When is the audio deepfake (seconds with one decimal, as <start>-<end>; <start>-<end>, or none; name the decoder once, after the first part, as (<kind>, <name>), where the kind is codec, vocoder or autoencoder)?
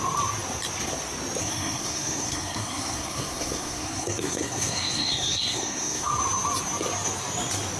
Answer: 1.4-6.1 (codec, SNAC)